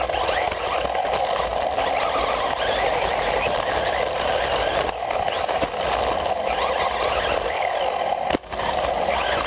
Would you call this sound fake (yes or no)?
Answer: no